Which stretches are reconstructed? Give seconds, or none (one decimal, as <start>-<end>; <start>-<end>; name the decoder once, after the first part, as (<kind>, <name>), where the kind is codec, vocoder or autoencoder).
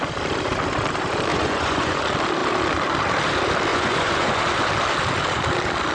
1.3-2.0 (vocoder, Vocos); 3.7-4.4